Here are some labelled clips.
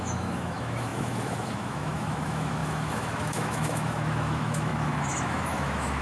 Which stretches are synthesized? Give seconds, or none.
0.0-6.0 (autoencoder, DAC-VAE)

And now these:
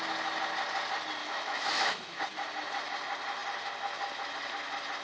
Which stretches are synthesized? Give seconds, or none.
1.2-2.2 (autoencoder, DAC-VAE)

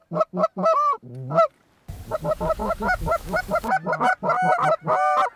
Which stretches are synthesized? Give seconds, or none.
2.6-3.4 (autoencoder, DAC-VAE)

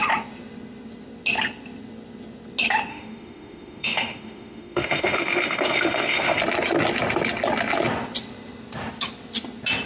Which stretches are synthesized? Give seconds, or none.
2.9-6.4 (autoencoder, DAC-VAE)